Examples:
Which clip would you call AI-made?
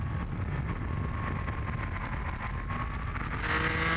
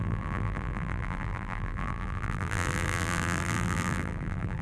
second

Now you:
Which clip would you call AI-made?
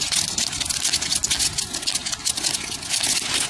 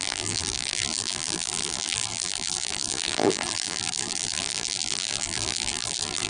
second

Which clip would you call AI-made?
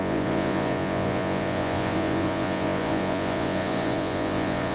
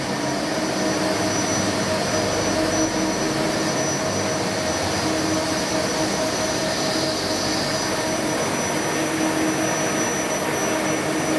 first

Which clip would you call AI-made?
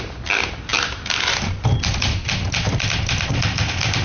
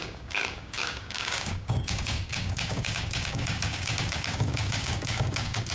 second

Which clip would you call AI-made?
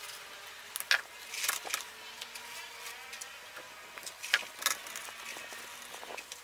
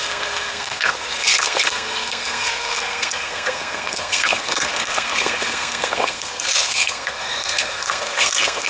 second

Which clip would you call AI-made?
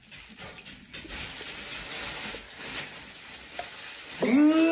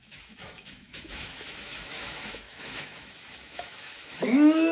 second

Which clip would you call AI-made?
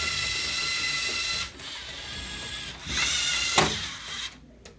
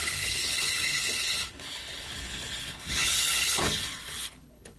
second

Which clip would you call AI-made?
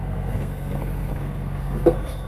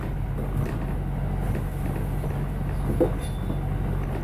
first